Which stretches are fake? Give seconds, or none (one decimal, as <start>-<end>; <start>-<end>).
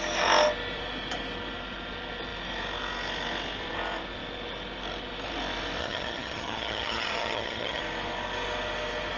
5.8-7.8